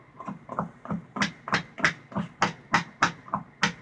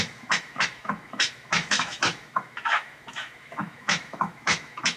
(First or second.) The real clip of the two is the first